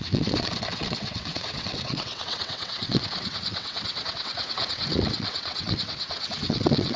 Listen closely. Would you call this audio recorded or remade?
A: remade